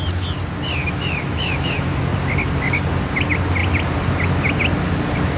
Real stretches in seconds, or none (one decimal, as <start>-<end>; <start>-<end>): 0.0-0.8; 2.0-5.4